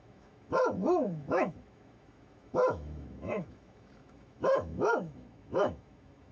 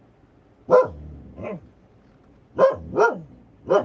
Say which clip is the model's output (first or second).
first